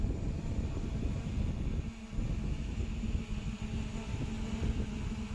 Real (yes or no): yes